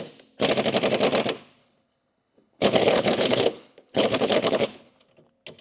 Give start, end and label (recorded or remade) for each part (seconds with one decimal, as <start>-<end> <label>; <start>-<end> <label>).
0.0-1.6 recorded; 1.6-5.0 remade; 5.0-5.6 recorded